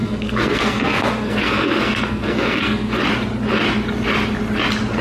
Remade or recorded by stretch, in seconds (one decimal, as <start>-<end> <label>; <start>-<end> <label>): 0.0-3.0 remade; 3.0-5.0 recorded